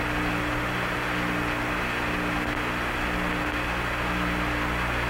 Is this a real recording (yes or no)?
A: yes